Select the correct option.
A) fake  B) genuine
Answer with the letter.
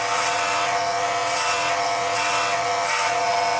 A